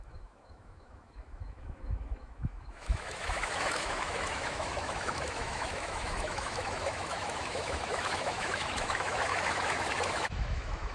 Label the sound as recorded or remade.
remade